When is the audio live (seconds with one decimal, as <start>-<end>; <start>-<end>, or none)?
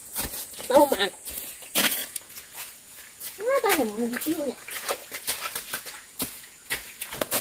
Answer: 5.0-5.8